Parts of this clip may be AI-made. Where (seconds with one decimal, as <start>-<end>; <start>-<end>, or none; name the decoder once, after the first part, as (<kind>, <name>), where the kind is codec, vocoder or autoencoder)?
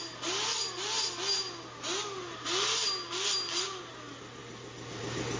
none